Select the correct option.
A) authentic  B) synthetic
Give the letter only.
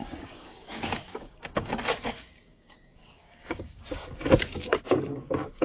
B